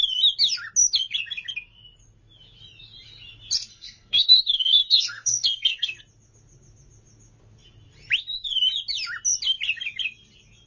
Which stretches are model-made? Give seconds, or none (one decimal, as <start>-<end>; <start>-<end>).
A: 3.7-6.0